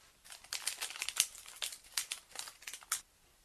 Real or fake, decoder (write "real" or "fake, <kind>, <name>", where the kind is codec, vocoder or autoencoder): real